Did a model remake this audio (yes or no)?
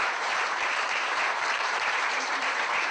yes